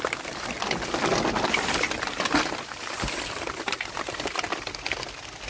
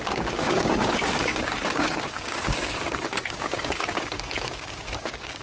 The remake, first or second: second